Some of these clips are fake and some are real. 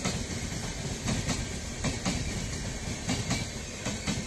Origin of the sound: real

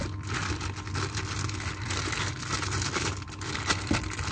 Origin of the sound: real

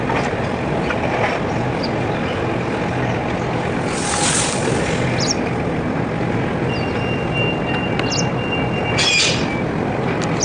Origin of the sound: real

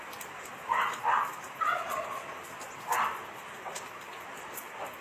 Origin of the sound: real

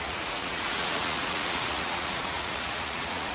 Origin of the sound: fake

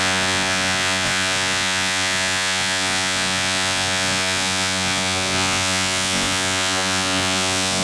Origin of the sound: fake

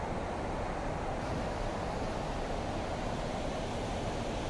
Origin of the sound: real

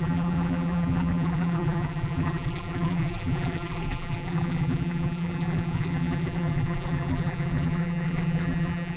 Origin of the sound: fake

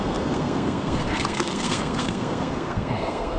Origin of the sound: fake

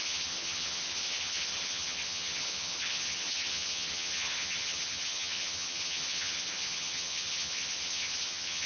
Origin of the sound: fake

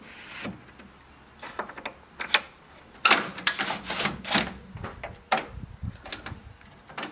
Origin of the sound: real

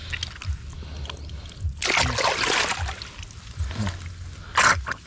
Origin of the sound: real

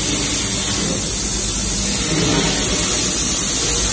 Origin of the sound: real